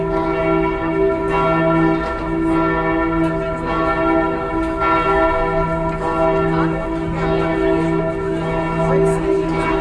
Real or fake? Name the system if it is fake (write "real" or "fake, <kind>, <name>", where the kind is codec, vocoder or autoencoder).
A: real